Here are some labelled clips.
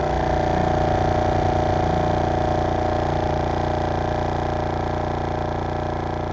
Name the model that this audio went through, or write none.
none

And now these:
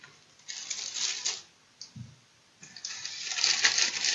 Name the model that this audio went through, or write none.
none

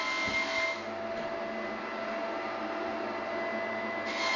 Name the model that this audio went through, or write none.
none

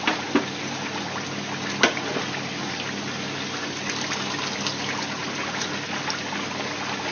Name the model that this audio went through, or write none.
none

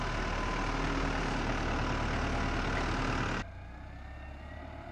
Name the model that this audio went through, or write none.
none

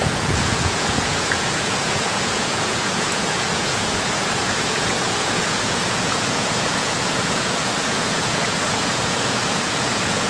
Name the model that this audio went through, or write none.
vocoder, Vocos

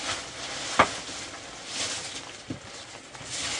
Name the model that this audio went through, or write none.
none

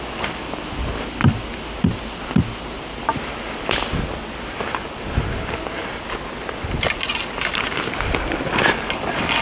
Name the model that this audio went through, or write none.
none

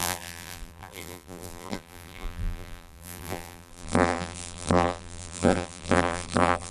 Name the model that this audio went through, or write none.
vocoder, BigVGAN v2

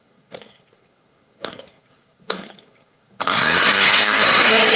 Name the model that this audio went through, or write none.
codec, SNAC